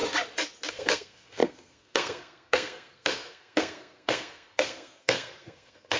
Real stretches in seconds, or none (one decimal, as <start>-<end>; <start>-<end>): 0.0-0.7